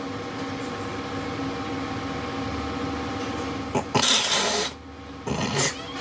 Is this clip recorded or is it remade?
recorded